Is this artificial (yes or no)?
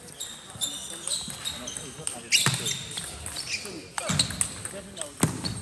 no